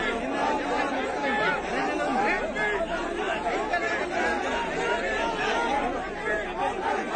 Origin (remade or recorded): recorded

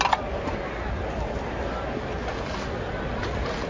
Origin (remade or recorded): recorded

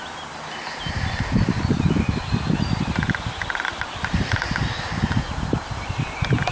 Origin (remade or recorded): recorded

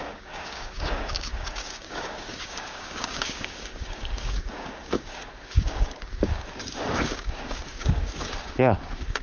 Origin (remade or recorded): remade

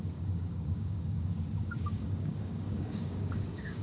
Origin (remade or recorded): remade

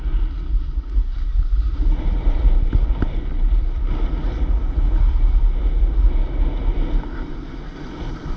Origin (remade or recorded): recorded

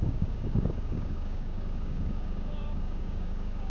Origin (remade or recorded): remade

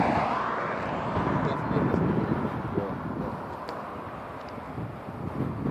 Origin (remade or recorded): recorded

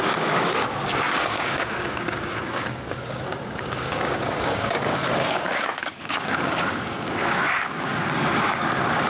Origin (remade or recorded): remade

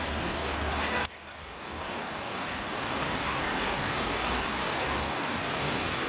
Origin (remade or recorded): remade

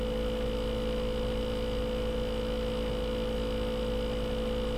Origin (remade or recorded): recorded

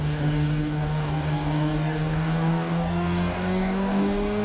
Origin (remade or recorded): remade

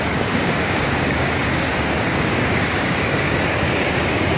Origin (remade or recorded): remade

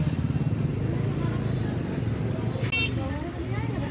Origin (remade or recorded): recorded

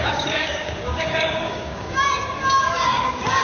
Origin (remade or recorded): remade